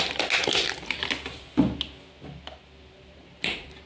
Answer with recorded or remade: recorded